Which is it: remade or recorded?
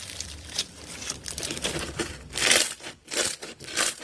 remade